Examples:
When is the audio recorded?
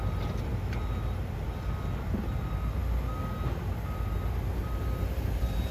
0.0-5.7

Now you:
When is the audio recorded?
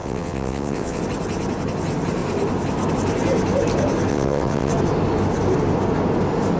1.0-4.1; 4.7-6.6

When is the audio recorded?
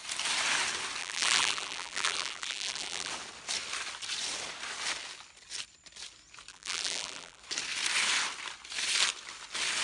0.0-1.0; 3.1-6.5; 7.4-9.8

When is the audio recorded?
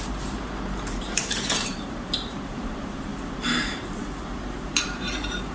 none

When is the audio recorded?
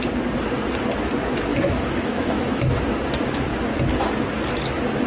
0.0-1.5; 2.8-5.1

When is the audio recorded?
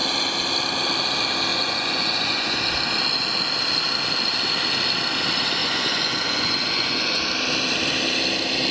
0.0-1.5; 2.6-5.6; 7.2-8.7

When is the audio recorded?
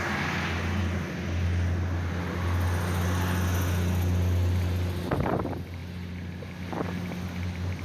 0.0-7.8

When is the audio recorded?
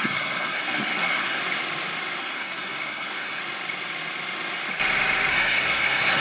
1.4-2.2; 3.4-5.3